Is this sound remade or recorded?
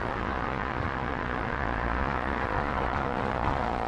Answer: remade